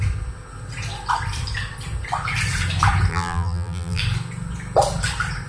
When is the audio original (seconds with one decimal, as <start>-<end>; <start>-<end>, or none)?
0.0-3.1; 4.0-5.5